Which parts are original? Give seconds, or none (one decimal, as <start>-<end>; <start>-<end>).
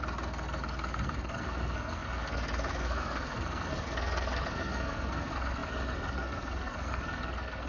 none